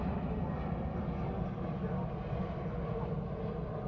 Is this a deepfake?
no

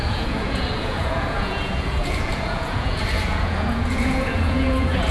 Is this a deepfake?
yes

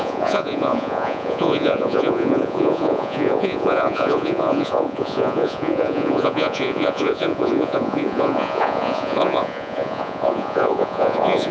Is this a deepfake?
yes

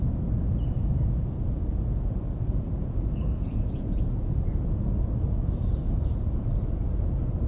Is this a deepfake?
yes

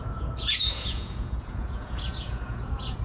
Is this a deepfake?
yes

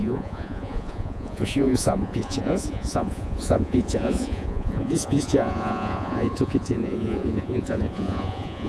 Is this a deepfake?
yes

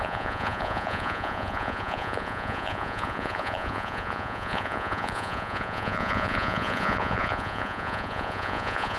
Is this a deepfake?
yes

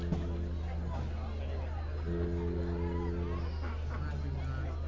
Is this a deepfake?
no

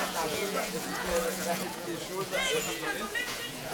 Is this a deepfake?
yes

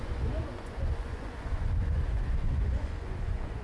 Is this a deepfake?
yes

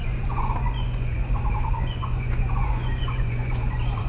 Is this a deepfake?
yes